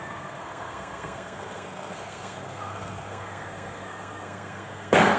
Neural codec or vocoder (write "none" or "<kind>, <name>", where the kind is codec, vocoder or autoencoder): codec, SNAC